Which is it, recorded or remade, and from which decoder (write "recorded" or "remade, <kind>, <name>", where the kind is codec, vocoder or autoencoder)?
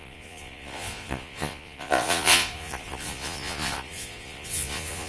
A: remade, vocoder, Vocos